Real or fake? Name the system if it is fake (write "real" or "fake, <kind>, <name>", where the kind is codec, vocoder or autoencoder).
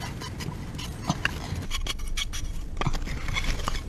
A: real